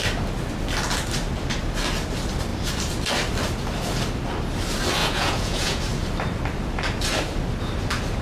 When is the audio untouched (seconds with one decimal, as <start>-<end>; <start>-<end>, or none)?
0.0-5.0; 5.8-8.2